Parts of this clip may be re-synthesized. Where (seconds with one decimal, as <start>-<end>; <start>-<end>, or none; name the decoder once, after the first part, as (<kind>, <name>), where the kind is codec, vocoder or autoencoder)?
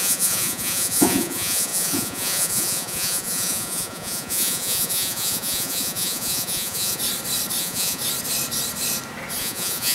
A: 0.0-7.0 (vocoder, Vocos); 7.6-8.0; 9.4-9.9